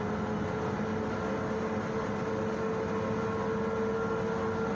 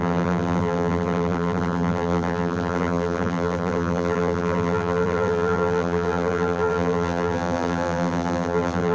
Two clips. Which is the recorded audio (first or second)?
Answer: first